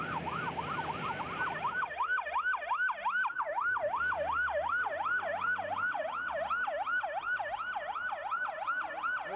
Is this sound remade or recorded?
recorded